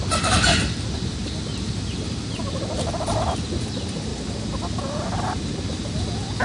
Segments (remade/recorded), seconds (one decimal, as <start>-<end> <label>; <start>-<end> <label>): 0.0-6.4 recorded